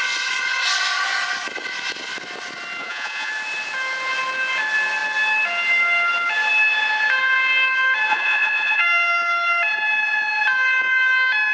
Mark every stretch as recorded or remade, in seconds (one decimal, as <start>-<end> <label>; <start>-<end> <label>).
0.0-2.8 recorded; 2.8-3.3 remade; 3.3-8.1 recorded; 8.1-8.8 remade; 8.8-11.5 recorded